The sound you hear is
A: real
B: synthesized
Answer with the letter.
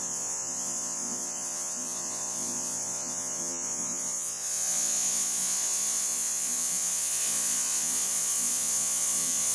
B